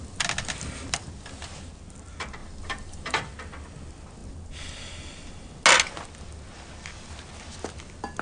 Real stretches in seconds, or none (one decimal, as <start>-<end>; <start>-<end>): 0.0-2.4; 3.3-8.2